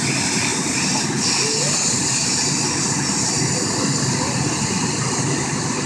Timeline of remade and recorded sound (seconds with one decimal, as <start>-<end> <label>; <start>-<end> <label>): 0.0-5.9 recorded